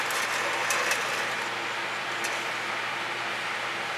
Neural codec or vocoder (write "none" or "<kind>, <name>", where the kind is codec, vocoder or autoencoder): none